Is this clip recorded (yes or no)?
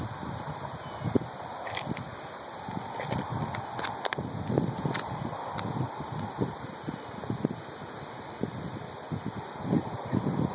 yes